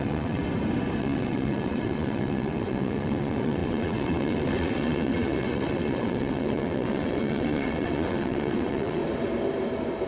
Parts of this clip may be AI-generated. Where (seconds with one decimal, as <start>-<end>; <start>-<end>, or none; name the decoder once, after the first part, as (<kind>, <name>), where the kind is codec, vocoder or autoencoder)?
0.0-0.4 (vocoder, WaveNeXt); 1.0-9.0